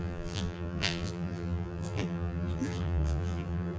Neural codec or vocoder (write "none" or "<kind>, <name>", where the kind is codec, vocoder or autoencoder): vocoder, BigVGAN v2